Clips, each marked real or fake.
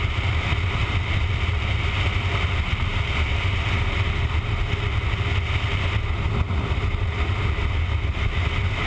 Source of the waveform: real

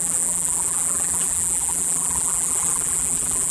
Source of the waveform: fake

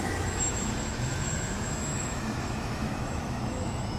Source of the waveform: fake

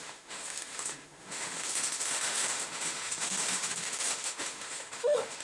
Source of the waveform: fake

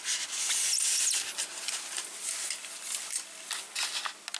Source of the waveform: real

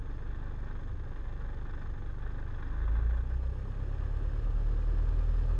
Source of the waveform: real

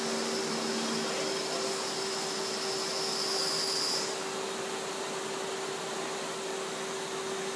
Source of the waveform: real